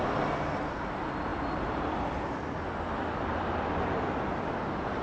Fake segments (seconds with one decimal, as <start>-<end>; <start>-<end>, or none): none